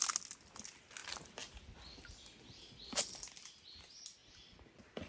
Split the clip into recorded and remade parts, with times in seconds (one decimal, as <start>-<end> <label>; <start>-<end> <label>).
0.0-5.1 recorded